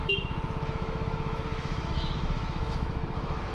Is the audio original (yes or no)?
no